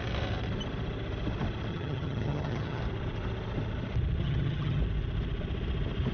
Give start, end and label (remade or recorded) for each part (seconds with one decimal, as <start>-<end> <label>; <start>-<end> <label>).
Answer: 0.0-1.7 recorded; 1.7-2.8 remade; 2.8-4.2 recorded; 4.2-4.8 remade; 4.8-6.1 recorded